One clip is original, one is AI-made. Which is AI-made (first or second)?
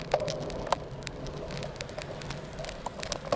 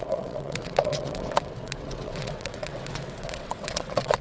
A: second